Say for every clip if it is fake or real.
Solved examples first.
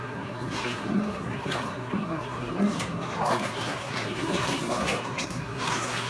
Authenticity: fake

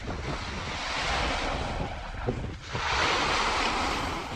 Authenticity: real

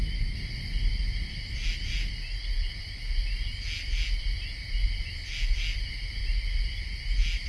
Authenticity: real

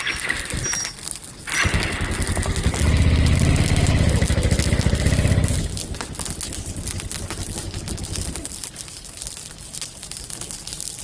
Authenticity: real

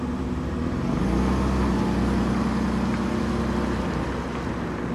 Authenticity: real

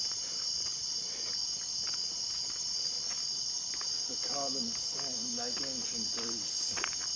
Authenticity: real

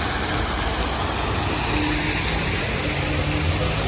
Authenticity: real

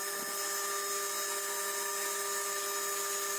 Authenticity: real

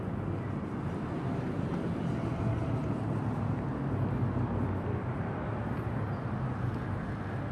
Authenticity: real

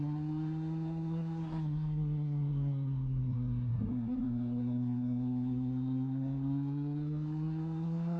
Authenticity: fake